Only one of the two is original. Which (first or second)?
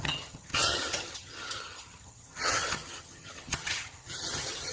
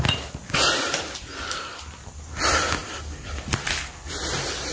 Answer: second